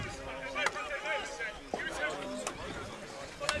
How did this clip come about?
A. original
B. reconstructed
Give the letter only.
A